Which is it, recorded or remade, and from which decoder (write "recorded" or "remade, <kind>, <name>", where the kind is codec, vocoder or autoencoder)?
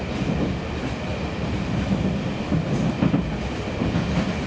recorded